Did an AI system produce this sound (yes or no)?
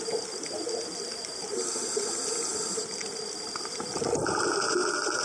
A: no